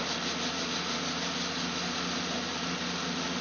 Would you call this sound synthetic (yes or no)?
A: no